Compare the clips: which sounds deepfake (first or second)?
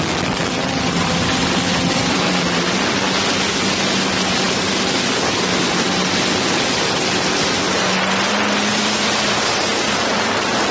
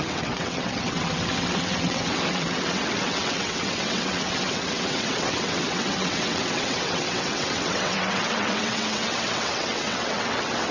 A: second